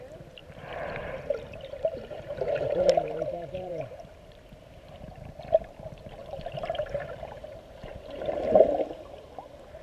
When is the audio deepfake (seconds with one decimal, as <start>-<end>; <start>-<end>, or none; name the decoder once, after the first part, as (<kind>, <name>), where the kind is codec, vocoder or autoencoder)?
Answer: 0.4-5.4 (vocoder, BigVGAN v2); 6.2-8.6